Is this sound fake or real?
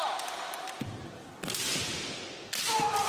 fake